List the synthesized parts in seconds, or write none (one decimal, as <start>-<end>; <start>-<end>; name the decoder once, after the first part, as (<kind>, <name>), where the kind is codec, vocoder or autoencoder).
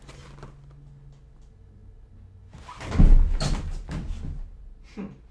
none